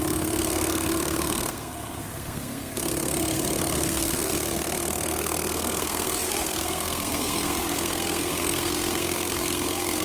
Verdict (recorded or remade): remade